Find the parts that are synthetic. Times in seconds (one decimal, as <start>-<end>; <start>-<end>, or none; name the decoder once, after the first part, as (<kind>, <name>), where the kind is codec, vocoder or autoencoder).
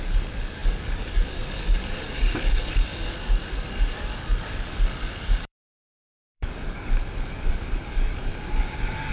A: 0.0-9.1 (codec, DAC)